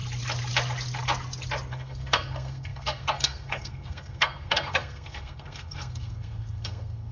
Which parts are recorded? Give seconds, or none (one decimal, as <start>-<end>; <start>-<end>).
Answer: 0.0-1.7